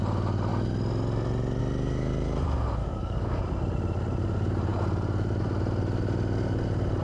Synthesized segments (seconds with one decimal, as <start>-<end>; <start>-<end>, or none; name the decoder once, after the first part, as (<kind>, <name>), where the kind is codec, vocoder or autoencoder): 2.8-3.4 (codec, DAC)